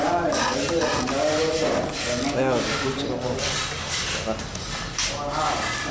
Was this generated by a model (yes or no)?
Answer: no